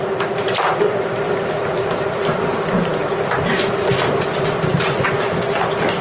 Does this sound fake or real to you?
real